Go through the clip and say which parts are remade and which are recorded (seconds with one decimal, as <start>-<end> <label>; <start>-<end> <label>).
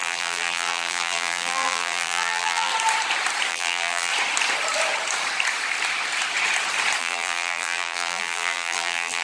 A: 0.0-2.7 remade; 2.7-3.5 recorded; 3.5-4.1 remade; 4.1-7.0 recorded; 7.0-9.2 remade